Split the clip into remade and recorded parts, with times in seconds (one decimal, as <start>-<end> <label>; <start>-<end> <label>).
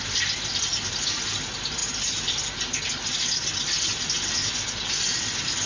0.0-5.7 recorded